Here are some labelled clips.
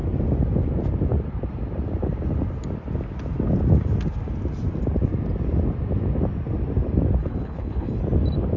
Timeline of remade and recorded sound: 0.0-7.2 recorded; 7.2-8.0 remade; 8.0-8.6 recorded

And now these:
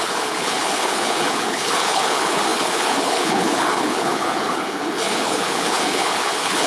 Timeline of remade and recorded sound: 0.0-6.7 remade

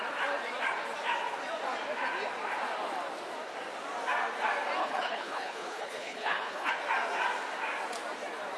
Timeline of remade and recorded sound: 0.0-4.8 recorded; 4.8-6.7 remade; 6.7-8.6 recorded

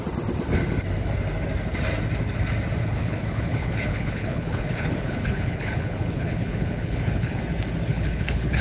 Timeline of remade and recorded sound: 0.0-2.8 recorded; 2.8-7.4 remade; 7.4-7.9 recorded; 7.9-8.6 remade